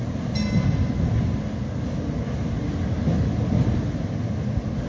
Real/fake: real